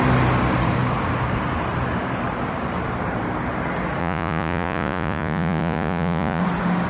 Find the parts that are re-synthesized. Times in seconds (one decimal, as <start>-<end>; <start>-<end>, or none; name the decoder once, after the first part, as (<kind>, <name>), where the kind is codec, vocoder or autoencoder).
4.0-6.4 (vocoder, Vocos)